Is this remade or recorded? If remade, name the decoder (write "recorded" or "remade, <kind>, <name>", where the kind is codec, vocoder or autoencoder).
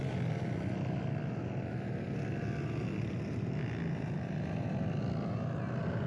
recorded